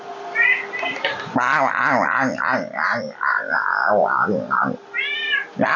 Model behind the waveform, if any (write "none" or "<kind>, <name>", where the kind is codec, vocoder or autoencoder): none